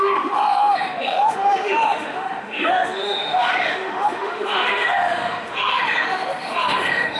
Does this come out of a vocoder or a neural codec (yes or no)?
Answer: yes